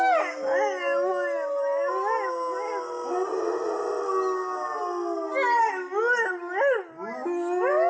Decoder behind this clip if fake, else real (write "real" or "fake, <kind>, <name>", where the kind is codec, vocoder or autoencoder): real